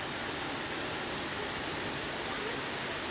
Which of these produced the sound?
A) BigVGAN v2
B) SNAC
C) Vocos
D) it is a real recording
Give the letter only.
D